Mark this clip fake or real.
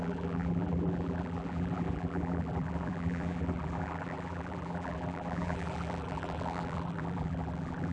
fake